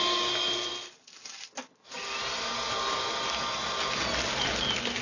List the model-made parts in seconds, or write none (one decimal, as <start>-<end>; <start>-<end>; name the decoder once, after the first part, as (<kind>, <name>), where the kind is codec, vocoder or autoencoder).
none

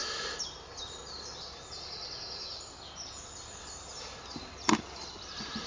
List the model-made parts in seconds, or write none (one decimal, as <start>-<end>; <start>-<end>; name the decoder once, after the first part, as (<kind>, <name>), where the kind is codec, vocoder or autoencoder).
none

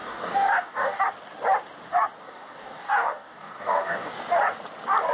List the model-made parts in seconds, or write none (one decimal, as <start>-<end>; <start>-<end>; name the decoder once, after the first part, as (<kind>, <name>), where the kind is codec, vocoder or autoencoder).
0.0-1.0 (codec, DAC); 2.2-4.1

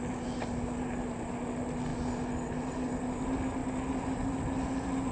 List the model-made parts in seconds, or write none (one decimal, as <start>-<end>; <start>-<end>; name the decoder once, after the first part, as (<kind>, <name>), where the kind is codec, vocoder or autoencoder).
none

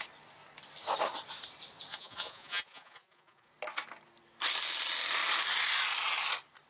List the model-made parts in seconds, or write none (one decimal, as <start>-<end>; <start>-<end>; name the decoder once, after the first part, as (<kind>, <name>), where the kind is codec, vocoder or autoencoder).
1.9-3.5 (vocoder, Vocos)

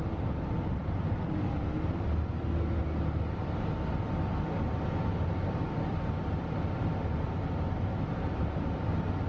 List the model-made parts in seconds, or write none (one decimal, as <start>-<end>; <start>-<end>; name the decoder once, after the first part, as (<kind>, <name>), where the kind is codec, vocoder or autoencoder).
none

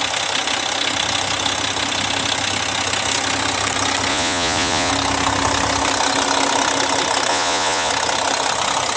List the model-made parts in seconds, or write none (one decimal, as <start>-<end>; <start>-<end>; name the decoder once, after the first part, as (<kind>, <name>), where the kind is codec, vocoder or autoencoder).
4.1-4.9 (vocoder, Vocos); 7.3-7.9